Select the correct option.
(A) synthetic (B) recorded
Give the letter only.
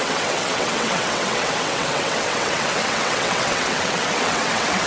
A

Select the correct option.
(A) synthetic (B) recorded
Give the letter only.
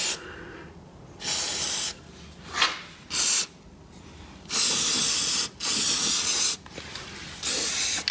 B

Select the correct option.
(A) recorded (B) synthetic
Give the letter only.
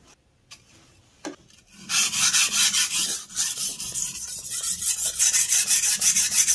A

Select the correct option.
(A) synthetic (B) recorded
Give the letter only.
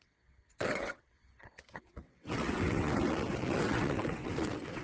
A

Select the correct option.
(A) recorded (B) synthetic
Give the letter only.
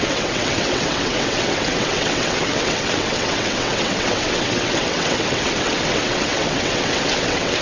B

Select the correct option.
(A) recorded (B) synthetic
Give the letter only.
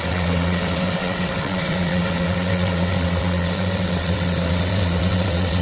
B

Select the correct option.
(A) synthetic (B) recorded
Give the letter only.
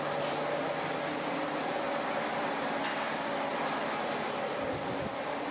B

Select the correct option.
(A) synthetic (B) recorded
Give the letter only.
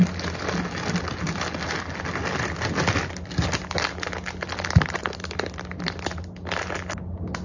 B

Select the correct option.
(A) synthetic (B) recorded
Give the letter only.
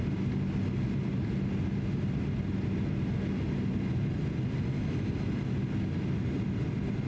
B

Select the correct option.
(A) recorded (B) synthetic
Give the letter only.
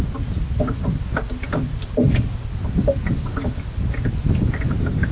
A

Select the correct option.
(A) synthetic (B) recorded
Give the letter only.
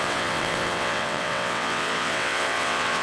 A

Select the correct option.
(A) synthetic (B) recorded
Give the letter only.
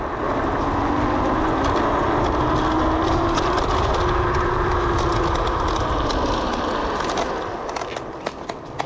B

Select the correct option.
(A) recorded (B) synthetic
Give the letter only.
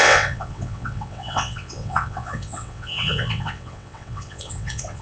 B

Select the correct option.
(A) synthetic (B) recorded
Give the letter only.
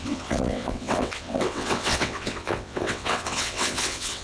A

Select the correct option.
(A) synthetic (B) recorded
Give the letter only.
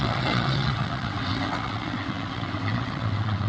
A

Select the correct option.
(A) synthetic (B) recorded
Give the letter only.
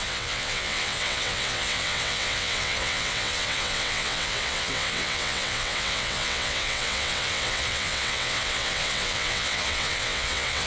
A